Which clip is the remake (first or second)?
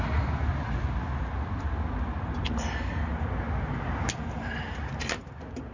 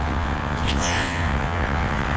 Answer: second